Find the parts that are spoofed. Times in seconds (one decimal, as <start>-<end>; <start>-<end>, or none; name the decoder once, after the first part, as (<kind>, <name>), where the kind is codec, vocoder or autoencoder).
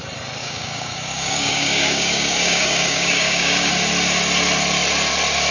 0.4-3.7 (codec, DAC)